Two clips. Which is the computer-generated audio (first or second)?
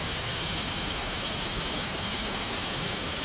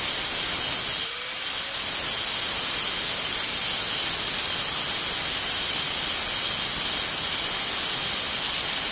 first